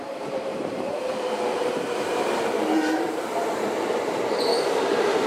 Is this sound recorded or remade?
remade